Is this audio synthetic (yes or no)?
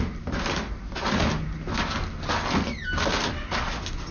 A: no